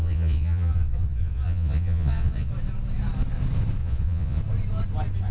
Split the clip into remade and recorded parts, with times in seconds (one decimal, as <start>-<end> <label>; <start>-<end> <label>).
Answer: 0.0-2.5 remade; 2.5-3.8 recorded; 3.8-4.4 remade; 4.4-5.3 recorded